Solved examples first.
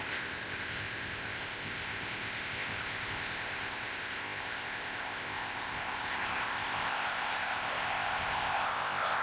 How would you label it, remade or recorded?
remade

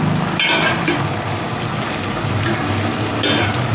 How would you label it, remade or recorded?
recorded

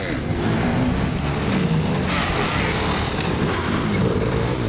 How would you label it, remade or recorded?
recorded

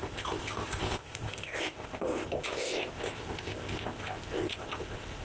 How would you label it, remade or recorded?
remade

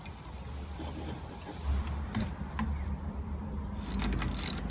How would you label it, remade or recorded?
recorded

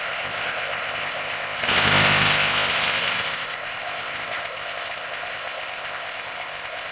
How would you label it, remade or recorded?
remade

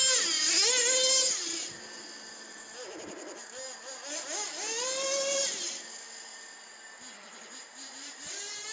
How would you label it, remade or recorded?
recorded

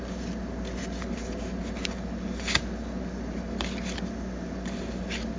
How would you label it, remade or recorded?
recorded